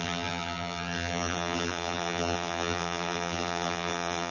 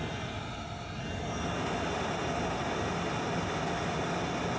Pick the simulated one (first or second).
first